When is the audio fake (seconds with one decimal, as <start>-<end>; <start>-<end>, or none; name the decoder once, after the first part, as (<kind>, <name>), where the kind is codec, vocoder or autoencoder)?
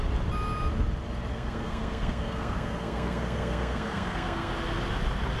1.3-4.5 (codec, SNAC)